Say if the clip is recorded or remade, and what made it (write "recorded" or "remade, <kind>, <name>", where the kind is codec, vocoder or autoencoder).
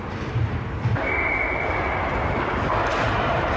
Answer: recorded